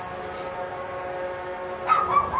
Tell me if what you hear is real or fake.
real